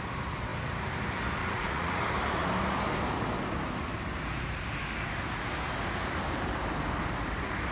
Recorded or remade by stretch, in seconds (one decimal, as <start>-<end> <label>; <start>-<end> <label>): 0.0-1.4 recorded; 1.4-2.0 remade; 2.0-7.7 recorded